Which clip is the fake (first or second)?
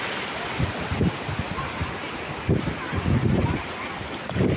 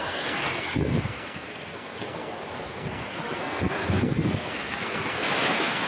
second